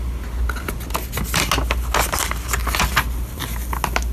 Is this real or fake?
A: real